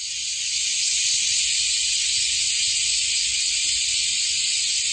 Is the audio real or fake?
real